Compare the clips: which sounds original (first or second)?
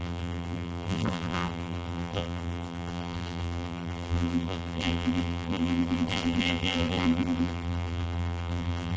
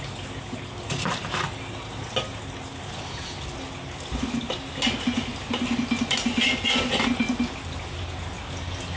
second